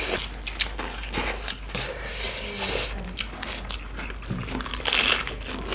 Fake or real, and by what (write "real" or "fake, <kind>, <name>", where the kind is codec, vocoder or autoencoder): real